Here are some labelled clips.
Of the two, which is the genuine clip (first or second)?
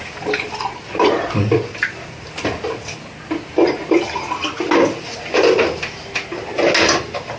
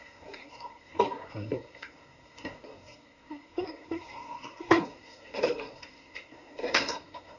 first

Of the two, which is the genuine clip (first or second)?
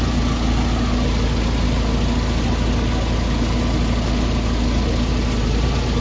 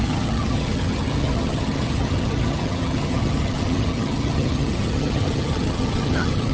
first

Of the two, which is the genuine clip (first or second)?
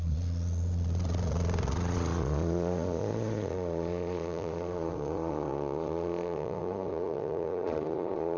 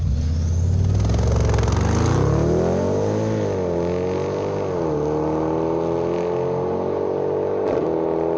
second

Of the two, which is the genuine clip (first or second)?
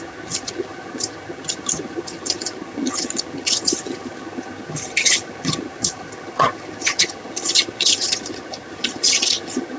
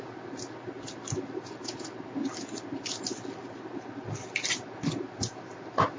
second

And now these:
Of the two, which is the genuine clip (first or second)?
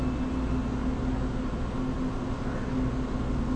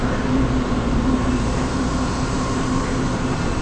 first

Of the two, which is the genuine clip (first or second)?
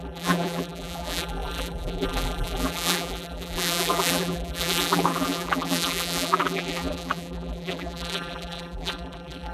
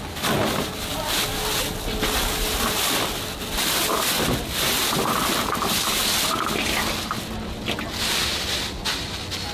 second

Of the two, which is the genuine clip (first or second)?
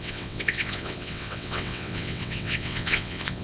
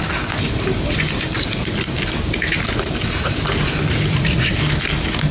second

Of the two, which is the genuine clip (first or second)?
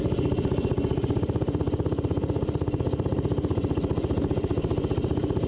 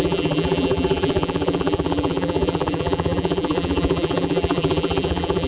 first